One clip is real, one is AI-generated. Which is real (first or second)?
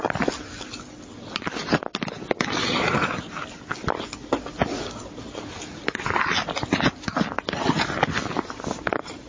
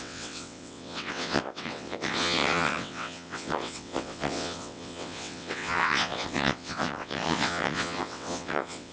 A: first